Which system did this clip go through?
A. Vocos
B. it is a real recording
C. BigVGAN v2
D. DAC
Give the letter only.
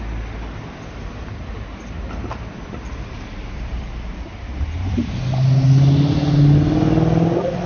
B